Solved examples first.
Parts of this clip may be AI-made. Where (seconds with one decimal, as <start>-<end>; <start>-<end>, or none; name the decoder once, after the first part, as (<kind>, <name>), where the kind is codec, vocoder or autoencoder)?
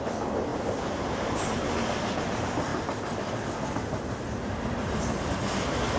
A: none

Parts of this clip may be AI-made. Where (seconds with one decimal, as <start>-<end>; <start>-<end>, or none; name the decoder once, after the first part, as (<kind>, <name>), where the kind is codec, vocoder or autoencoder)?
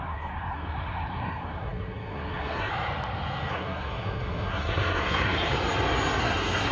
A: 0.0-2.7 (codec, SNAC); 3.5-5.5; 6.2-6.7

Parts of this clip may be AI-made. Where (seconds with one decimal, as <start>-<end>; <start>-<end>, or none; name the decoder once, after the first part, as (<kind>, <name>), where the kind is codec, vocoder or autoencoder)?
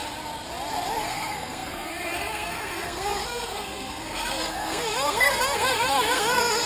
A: 1.0-6.7 (codec, SNAC)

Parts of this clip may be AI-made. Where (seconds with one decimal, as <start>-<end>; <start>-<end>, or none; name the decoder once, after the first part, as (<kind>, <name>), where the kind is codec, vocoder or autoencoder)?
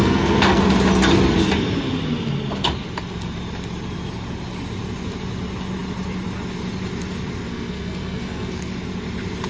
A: 0.0-0.6 (codec, SNAC); 7.5-8.7